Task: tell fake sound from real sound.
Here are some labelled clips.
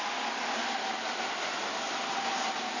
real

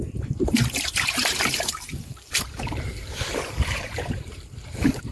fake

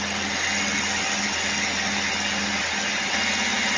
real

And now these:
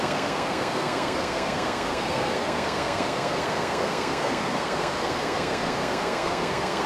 fake